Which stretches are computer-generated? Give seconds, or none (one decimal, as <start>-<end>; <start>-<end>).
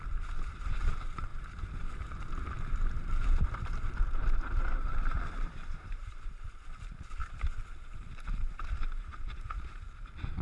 0.6-1.3; 2.3-10.4